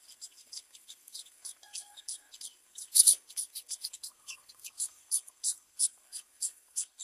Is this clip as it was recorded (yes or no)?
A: no